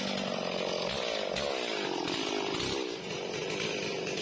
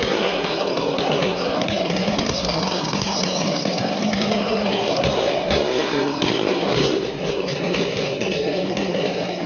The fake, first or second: second